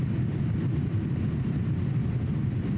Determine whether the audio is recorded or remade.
recorded